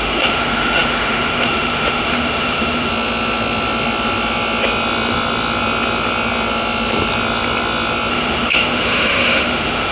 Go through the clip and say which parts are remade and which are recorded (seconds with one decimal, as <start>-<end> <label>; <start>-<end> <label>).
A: 0.0-2.9 remade; 2.9-8.1 recorded; 8.1-9.9 remade